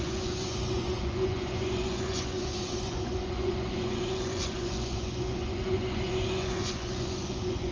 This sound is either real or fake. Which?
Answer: fake